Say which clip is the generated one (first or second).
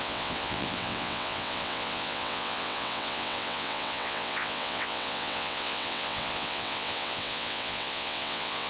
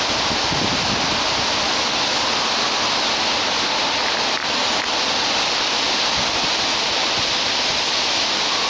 first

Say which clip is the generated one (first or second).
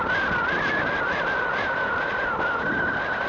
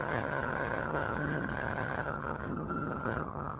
second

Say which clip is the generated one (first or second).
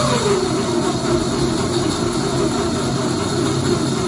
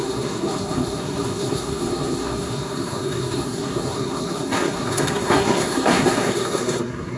second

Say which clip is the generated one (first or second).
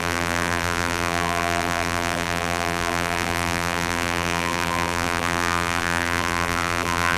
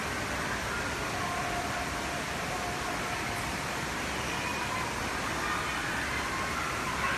first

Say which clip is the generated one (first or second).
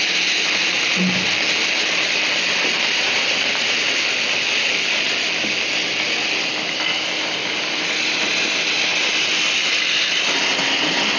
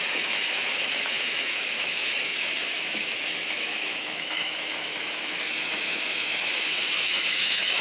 second